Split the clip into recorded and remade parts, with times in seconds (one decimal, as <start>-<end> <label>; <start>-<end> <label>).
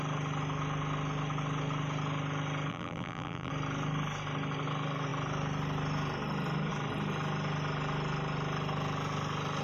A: 0.0-2.7 recorded; 2.7-3.5 remade; 3.5-9.6 recorded